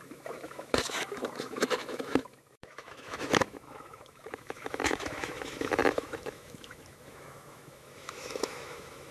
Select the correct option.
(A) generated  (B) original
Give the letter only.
A